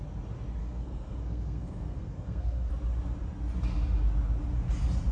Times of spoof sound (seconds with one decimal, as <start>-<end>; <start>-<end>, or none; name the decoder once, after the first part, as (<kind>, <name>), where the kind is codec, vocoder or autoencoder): 0.6-2.7 (codec, SNAC)